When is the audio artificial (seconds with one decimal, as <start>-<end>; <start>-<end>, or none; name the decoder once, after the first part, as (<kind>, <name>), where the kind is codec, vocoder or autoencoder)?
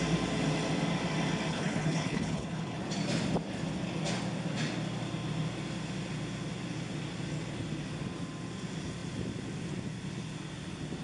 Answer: 1.5-2.8 (codec, HILCodec)